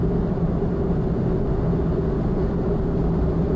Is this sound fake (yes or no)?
no